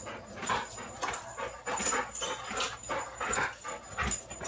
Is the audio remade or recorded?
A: recorded